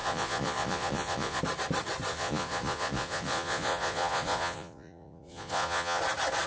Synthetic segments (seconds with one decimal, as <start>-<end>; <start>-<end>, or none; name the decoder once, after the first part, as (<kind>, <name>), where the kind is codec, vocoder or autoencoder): 0.0-1.4 (vocoder, Vocos); 2.1-6.0